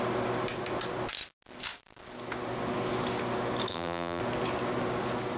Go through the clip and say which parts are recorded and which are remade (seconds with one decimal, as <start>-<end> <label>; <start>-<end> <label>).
0.0-3.7 recorded; 3.7-4.2 remade; 4.2-5.4 recorded